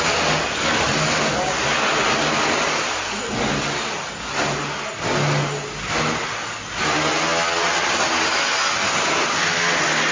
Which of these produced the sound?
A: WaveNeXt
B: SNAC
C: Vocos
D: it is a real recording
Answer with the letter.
D